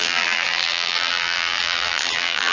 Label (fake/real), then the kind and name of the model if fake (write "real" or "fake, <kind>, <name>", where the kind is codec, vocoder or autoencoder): fake, vocoder, BigVGAN v2